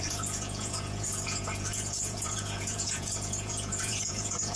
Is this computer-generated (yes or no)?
yes